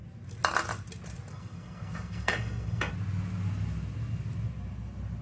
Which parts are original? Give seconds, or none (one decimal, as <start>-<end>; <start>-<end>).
0.0-1.3; 2.9-5.2